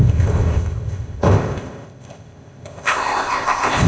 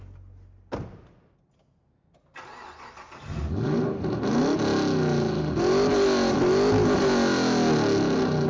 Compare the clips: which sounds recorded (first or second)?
second